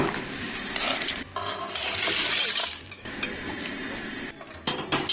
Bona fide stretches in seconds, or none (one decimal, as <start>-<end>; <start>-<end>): 0.0-2.6; 3.2-5.1